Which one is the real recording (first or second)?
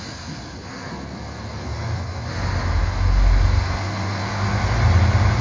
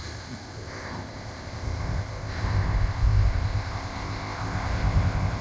first